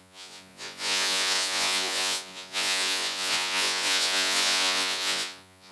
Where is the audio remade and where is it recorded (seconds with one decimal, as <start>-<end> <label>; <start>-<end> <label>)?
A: 0.0-5.7 remade